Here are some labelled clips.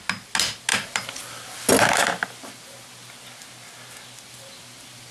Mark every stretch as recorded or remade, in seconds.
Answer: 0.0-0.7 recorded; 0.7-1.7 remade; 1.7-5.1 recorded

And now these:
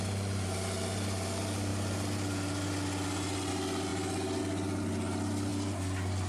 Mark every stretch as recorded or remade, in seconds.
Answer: 0.0-6.3 recorded